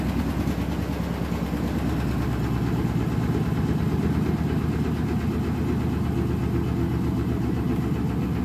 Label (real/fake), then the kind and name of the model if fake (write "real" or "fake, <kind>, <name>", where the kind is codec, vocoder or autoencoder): real